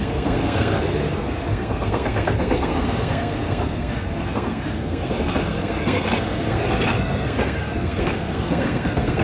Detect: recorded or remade remade